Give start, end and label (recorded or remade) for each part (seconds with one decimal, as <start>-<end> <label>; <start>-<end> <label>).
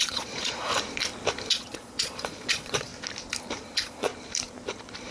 0.0-0.7 remade; 0.7-1.5 recorded; 1.5-2.9 remade; 2.9-3.6 recorded; 3.6-4.1 remade; 4.1-5.1 recorded